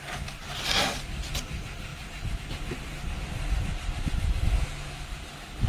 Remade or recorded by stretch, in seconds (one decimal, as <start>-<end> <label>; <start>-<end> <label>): 0.0-5.7 recorded